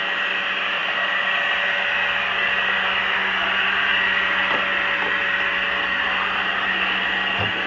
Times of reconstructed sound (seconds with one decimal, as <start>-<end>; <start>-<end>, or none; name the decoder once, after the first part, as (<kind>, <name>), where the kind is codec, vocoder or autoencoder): none